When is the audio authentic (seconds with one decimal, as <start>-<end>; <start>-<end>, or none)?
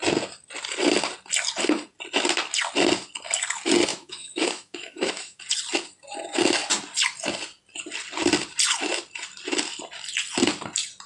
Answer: 0.0-3.9; 5.4-11.1